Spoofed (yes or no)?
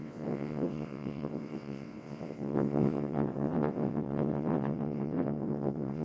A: yes